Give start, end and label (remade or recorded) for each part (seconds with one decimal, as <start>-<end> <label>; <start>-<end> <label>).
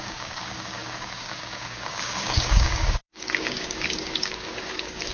0.0-5.1 remade